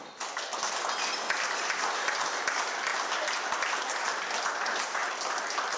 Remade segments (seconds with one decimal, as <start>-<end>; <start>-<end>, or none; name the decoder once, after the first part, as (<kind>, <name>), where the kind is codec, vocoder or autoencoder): none